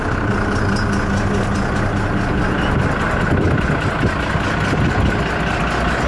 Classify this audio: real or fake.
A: real